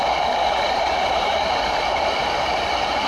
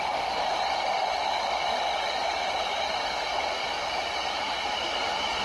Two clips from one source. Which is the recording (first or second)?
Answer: second